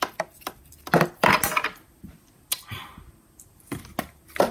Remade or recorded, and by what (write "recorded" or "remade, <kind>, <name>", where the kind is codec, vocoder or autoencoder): recorded